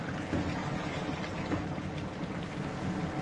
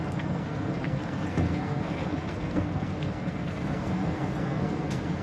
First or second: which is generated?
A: second